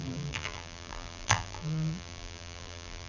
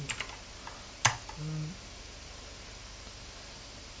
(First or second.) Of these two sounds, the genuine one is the second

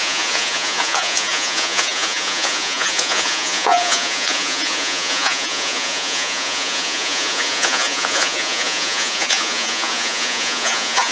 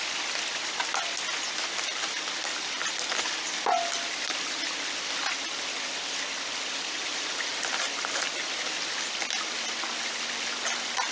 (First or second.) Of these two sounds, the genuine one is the second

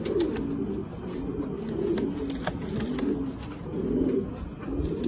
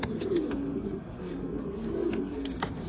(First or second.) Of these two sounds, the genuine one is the first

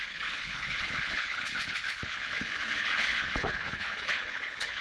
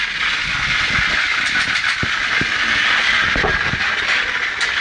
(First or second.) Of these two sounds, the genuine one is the second